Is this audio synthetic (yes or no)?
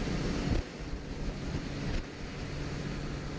no